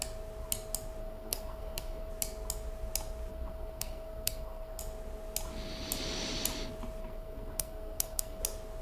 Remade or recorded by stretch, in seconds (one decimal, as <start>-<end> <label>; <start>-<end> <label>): 0.0-1.0 recorded; 1.0-2.1 remade; 2.1-3.3 recorded; 3.3-4.8 remade; 4.8-7.0 recorded; 7.0-8.4 remade; 8.4-8.8 recorded